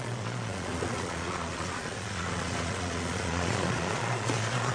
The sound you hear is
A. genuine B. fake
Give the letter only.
B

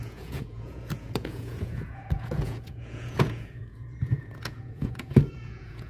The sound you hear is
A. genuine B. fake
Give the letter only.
B